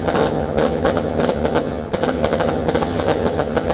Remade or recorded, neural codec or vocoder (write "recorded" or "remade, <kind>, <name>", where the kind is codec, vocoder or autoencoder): remade, vocoder, HiFi-GAN